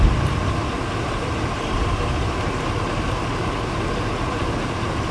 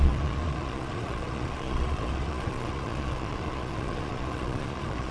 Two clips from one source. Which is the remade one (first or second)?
second